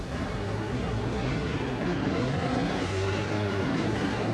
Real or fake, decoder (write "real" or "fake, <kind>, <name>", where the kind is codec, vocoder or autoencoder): fake, codec, SNAC